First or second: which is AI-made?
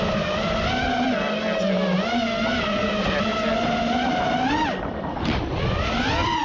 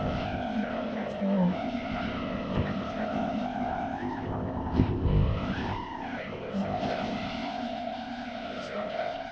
second